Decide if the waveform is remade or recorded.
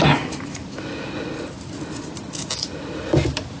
recorded